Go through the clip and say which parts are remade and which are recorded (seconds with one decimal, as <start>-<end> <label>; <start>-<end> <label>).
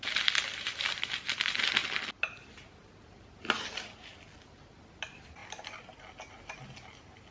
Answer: 0.0-7.3 recorded